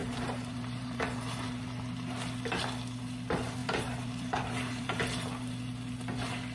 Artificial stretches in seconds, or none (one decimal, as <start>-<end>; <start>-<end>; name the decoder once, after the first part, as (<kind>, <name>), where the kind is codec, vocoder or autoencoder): 0.0-1.6 (vocoder, BigVGAN v2); 3.6-5.0